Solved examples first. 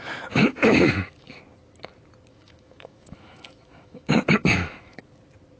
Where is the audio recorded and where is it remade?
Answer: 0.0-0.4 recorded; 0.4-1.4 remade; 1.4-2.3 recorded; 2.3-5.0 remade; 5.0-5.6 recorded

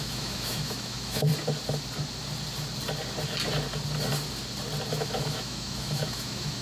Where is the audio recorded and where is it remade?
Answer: 0.0-1.3 remade; 1.3-4.9 recorded; 4.9-6.6 remade

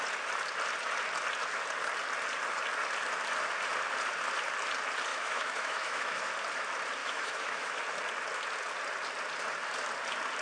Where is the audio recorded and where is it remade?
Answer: 0.0-5.1 recorded; 5.1-6.3 remade; 6.3-7.0 recorded; 7.0-7.8 remade; 7.8-10.4 recorded

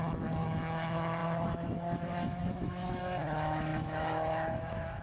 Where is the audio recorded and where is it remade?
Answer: 0.0-5.0 remade